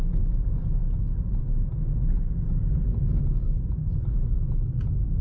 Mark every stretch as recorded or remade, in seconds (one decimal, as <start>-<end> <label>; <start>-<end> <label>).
0.0-5.2 recorded